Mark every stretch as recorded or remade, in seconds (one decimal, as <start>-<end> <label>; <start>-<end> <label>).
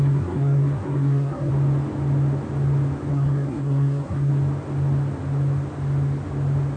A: 0.0-1.5 remade; 1.5-3.1 recorded; 3.1-4.3 remade; 4.3-6.8 recorded